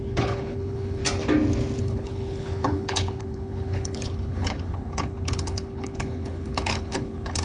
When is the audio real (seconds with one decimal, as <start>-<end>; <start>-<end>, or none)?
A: 1.0-1.8